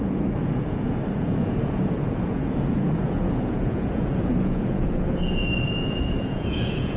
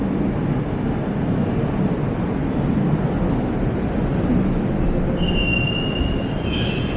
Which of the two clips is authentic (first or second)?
second